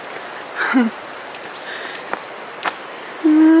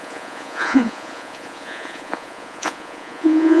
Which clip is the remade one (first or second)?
second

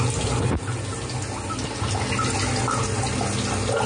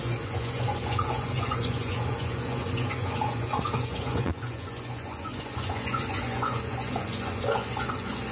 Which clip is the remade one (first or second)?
second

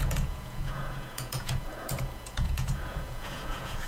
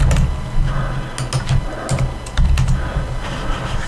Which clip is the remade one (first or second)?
first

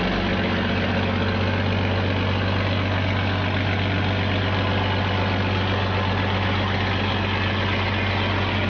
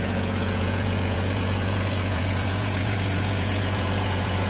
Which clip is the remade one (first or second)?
second